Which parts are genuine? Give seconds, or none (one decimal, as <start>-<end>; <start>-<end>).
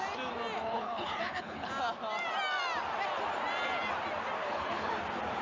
0.0-0.6; 1.7-4.4; 4.9-5.4